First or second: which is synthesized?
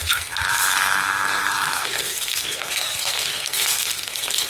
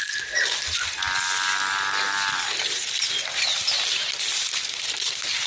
first